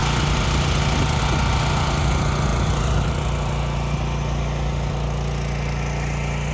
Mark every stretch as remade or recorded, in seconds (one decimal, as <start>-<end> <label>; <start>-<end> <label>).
0.0-6.5 recorded